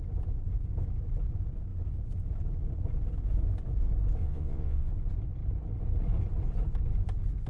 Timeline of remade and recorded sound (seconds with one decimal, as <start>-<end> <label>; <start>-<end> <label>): 0.0-4.2 recorded; 4.2-4.9 remade; 4.9-7.5 recorded